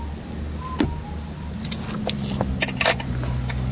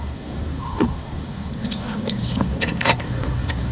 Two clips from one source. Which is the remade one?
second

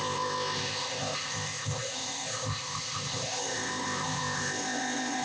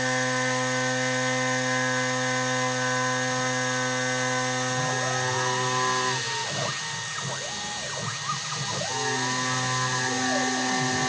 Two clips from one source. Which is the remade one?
first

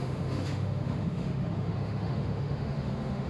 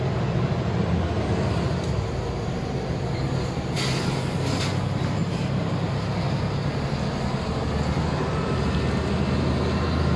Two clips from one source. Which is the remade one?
first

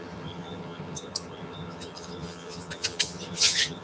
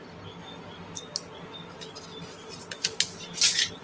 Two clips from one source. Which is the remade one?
first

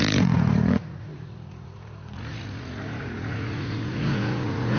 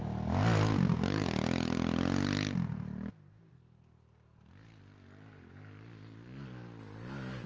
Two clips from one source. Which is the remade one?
first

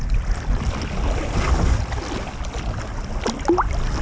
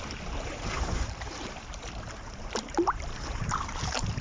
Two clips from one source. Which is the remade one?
second